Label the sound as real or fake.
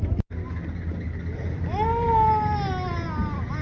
real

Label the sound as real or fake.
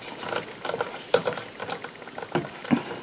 real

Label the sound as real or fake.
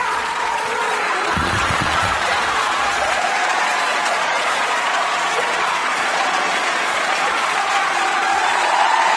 fake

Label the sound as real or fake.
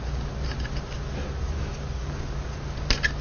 real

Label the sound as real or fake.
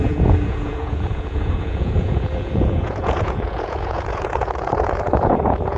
fake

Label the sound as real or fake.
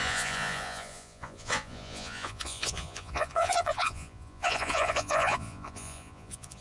fake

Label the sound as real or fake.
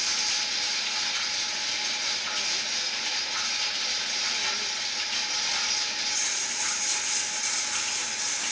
real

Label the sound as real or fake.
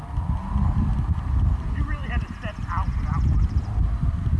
real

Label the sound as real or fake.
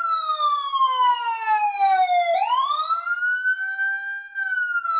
real